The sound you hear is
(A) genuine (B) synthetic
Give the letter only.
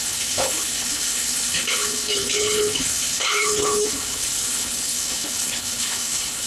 B